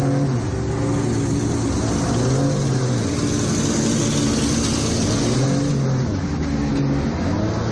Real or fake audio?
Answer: real